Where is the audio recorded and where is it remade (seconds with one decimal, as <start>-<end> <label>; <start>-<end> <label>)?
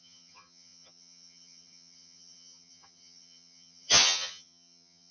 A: 0.0-5.1 remade